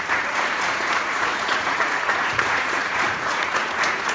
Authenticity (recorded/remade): remade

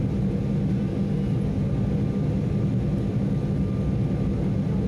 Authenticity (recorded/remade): recorded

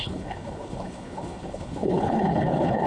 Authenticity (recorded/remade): remade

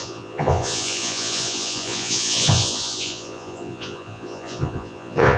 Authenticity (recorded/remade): remade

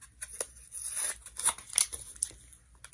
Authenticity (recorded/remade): recorded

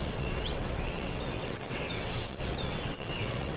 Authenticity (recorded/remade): remade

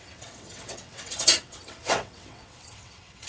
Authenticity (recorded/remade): remade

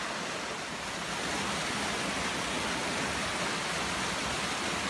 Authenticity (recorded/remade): recorded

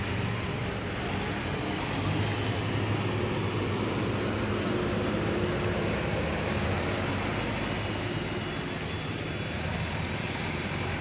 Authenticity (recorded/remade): recorded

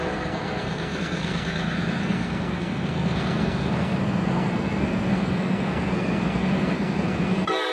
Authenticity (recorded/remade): remade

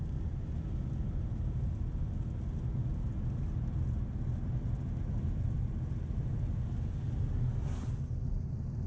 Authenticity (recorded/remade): recorded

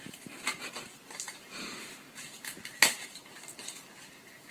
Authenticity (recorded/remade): remade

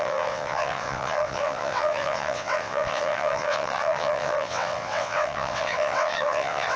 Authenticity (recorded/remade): remade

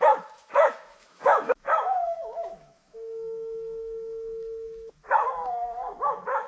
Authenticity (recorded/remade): remade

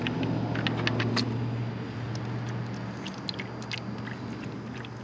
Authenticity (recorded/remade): recorded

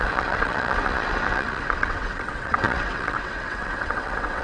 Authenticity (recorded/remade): remade